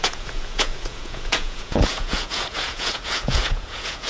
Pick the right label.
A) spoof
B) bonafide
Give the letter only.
A